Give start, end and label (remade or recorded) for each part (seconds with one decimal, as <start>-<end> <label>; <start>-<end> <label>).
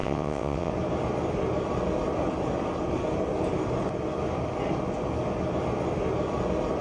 0.0-0.7 remade; 0.7-6.8 recorded